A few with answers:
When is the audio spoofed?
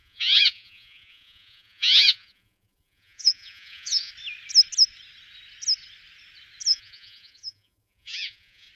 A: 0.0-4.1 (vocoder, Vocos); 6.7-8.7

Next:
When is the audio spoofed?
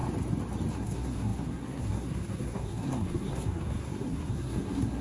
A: 0.7-5.0 (codec, SNAC)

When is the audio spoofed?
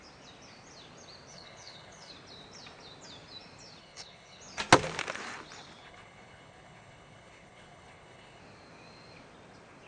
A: 1.3-2.1 (codec, HILCodec); 3.8-4.4; 5.8-8.4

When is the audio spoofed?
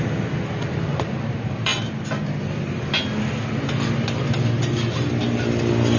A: none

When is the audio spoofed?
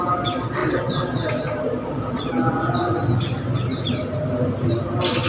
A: none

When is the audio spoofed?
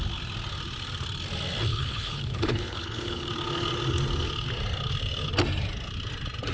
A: 1.7-3.3 (codec, HILCodec)